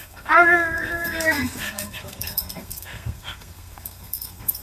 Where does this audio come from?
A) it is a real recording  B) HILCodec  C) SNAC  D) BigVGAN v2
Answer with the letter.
C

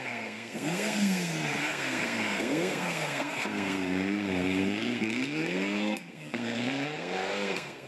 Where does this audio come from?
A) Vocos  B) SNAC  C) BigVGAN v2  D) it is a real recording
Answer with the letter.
B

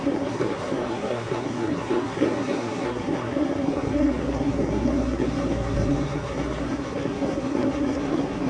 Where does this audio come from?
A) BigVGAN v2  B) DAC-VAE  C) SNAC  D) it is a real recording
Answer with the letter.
C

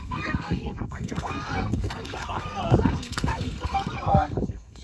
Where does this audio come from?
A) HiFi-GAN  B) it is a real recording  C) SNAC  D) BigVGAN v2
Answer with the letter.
C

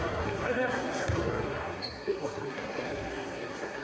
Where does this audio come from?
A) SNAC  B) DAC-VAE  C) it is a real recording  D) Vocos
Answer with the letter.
A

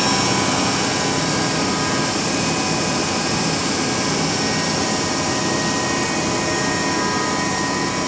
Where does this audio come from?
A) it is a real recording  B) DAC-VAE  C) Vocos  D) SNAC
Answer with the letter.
A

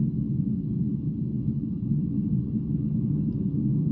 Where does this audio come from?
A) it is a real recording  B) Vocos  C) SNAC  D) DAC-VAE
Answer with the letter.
A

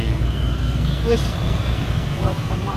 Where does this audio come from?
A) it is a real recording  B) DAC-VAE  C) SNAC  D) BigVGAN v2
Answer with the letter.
C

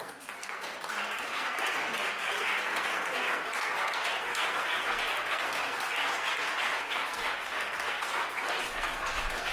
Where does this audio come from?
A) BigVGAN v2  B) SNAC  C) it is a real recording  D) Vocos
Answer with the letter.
B